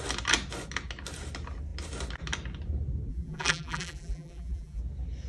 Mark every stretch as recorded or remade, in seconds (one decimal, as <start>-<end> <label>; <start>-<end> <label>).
0.0-3.1 recorded; 3.1-4.8 remade; 4.8-5.3 recorded